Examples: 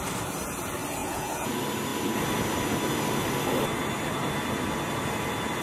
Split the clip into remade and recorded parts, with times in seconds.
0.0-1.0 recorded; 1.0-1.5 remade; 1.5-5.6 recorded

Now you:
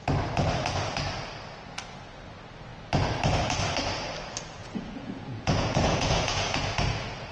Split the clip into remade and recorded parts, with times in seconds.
0.0-4.6 recorded; 4.6-7.3 remade

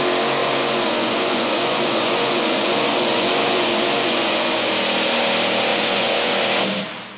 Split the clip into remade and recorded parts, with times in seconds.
0.0-0.4 recorded; 0.4-4.7 remade; 4.7-5.7 recorded; 5.7-6.3 remade; 6.3-7.2 recorded

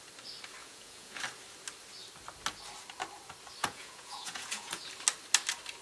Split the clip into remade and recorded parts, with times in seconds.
0.0-0.6 recorded; 0.6-1.2 remade; 1.2-3.6 recorded; 3.6-4.9 remade; 4.9-5.8 recorded